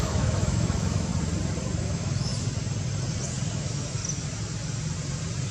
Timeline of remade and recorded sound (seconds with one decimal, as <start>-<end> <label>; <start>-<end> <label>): 0.0-1.1 remade; 1.1-1.8 recorded; 1.8-2.3 remade; 2.3-3.6 recorded; 3.6-4.0 remade; 4.0-5.5 recorded